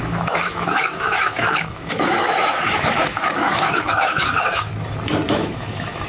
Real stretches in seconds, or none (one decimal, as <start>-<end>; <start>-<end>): 4.7-5.3